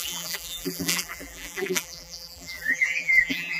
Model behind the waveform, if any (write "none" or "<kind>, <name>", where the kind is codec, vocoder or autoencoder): vocoder, BigVGAN v2